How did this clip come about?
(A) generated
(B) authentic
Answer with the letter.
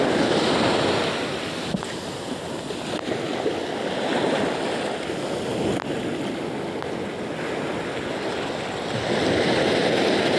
B